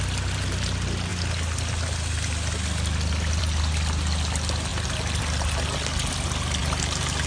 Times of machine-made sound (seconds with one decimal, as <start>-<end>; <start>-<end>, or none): none